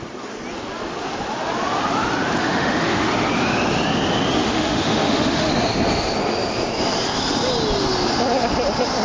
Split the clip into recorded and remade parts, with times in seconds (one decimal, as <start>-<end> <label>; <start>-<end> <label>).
0.0-2.4 recorded; 2.4-3.1 remade; 3.1-4.4 recorded; 4.4-5.5 remade; 5.5-9.0 recorded